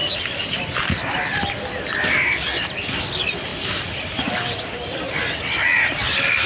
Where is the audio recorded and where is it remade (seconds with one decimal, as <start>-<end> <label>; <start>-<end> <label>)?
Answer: 0.0-6.5 recorded